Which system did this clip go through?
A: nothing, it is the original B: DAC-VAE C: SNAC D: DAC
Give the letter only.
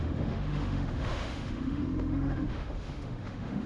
B